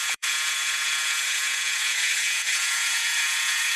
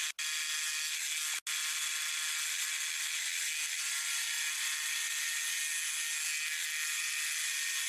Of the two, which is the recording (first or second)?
second